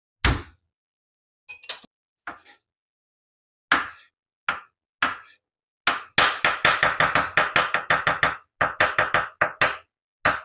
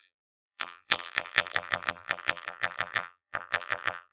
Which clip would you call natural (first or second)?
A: first